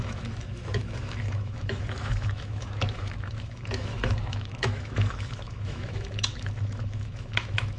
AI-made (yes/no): yes